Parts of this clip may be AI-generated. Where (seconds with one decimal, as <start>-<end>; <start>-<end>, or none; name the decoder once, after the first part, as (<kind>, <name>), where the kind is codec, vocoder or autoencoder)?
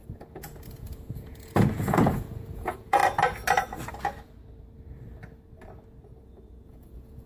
0.0-3.0 (vocoder, Vocos); 6.2-7.3